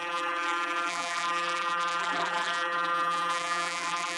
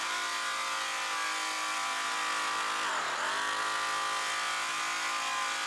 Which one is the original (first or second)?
second